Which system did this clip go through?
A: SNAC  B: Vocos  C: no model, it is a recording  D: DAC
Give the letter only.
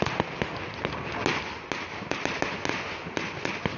C